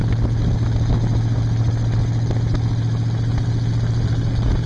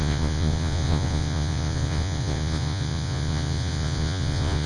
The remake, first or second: second